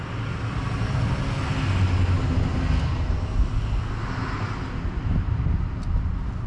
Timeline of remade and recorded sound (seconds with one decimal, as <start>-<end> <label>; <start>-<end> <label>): 0.0-6.5 recorded